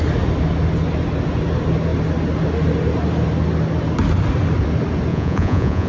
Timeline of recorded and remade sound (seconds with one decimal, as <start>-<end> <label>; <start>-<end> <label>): 0.0-5.1 recorded; 5.1-5.9 remade